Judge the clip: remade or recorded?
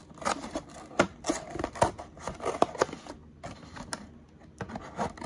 recorded